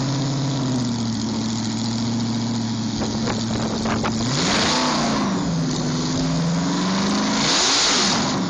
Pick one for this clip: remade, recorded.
recorded